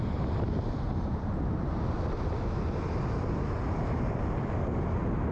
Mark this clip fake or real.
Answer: real